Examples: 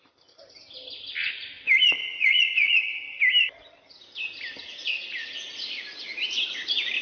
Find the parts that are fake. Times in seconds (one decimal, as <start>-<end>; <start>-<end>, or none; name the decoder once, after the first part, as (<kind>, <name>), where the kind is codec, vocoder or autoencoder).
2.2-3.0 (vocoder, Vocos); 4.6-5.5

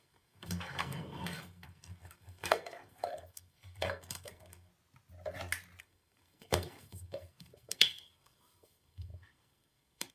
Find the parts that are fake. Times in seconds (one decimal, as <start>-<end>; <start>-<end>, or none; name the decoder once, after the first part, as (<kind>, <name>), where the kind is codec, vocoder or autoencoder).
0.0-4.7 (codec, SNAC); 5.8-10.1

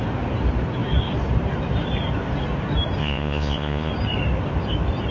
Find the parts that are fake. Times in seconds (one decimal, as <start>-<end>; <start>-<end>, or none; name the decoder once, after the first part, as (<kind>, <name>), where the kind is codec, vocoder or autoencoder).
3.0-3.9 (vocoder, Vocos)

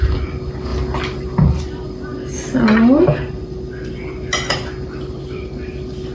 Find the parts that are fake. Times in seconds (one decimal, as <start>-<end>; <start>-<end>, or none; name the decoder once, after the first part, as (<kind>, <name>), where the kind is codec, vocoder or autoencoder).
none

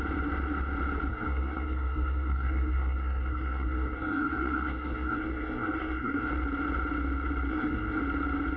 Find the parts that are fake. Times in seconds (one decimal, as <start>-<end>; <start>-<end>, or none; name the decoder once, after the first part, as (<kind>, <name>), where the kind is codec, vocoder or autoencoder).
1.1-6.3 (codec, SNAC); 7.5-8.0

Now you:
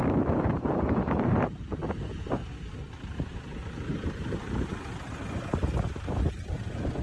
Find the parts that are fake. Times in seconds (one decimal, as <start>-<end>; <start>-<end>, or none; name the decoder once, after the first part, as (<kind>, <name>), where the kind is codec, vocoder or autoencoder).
0.0-1.8 (vocoder, BigVGAN v2); 2.9-4.7; 6.3-7.0